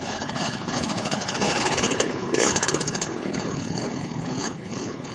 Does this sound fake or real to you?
fake